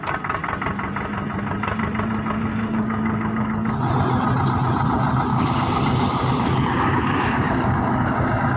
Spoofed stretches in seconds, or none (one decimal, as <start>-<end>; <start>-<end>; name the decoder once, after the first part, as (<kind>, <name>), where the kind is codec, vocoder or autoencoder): 2.5-3.5 (codec, DAC); 5.3-8.6